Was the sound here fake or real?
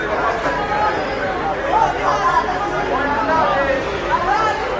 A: real